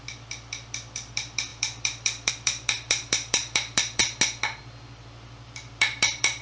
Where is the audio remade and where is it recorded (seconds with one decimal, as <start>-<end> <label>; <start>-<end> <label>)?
0.0-4.0 remade; 4.0-4.6 recorded; 4.6-6.4 remade